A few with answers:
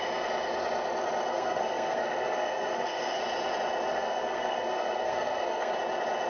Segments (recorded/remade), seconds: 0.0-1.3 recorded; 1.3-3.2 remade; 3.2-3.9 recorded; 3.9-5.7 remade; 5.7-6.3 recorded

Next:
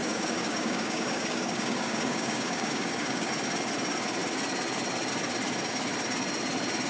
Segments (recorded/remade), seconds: 0.0-3.3 remade; 3.3-6.9 recorded

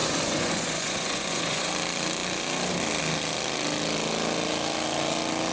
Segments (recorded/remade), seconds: 0.0-1.7 remade; 1.7-5.5 recorded

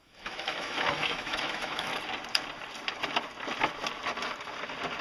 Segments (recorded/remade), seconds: 0.0-1.9 remade; 1.9-5.0 recorded